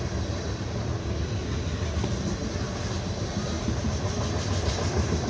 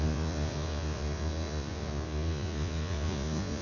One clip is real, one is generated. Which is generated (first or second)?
second